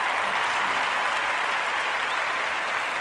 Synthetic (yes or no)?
no